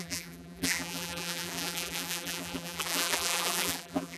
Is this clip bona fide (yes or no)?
no